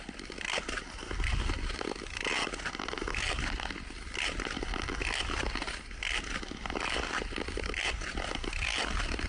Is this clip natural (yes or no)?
yes